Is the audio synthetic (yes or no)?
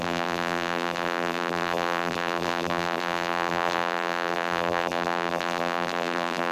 yes